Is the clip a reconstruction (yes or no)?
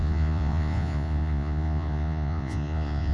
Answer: yes